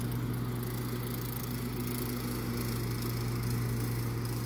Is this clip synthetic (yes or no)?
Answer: no